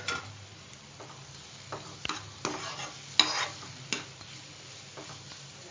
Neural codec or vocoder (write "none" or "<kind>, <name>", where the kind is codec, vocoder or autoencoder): none